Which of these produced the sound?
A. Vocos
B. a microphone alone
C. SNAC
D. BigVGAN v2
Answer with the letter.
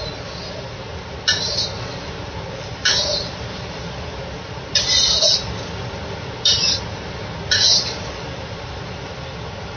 B